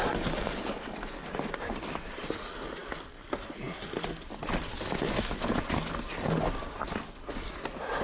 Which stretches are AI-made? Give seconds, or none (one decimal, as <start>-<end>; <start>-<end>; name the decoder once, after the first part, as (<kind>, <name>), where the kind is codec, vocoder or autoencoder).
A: none